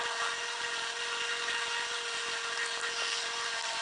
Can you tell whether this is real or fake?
real